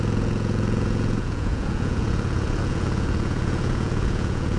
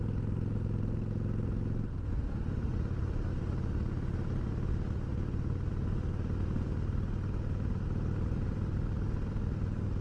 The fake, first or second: first